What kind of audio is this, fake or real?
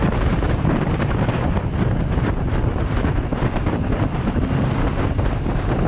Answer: fake